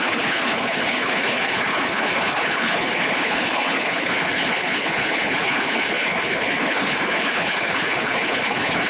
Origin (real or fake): fake